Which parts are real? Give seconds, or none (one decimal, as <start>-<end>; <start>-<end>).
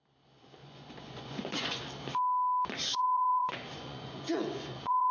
0.0-0.6; 1.8-2.8